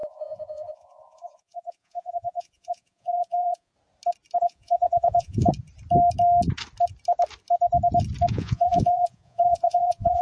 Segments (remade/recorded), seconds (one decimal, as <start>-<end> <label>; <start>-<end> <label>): 0.0-3.7 remade; 3.7-4.4 recorded; 4.4-5.5 remade; 5.5-8.3 recorded; 8.3-10.2 remade

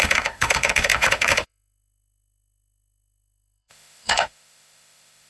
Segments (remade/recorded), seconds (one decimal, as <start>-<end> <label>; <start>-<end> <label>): 0.0-5.3 remade

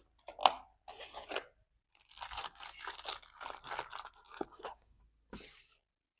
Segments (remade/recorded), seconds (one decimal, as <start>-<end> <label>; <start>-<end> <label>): 0.0-4.5 recorded; 4.5-5.0 remade; 5.0-6.2 recorded